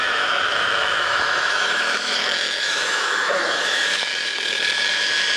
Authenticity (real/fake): fake